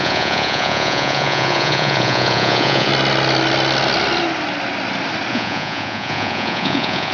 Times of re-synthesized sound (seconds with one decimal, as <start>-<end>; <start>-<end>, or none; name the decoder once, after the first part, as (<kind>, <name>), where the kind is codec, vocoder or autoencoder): 0.0-2.9 (vocoder, Vocos); 5.3-7.1